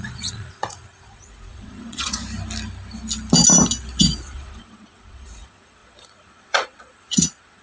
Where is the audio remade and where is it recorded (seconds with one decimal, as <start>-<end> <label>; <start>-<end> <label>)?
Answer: 0.0-2.2 remade; 2.2-4.0 recorded; 4.0-7.6 remade